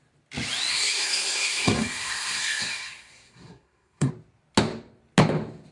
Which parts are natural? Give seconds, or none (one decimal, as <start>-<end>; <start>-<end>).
0.0-0.7; 4.1-5.7